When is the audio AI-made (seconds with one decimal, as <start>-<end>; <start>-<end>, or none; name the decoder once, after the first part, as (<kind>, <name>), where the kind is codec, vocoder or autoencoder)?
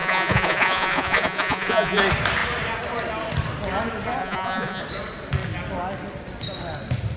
0.0-2.0 (vocoder, Vocos); 4.2-4.8